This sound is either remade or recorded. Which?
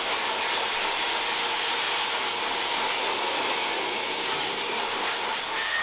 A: recorded